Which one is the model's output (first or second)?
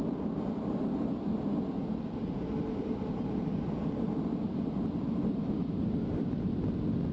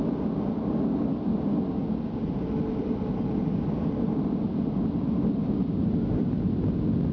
first